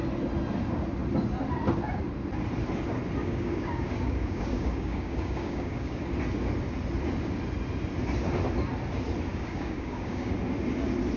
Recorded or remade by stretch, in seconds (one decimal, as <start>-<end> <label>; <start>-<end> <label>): 0.0-3.2 recorded; 3.2-6.1 remade; 6.1-9.3 recorded; 9.3-10.3 remade; 10.3-11.2 recorded